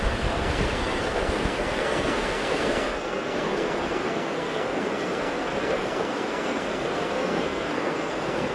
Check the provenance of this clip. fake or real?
fake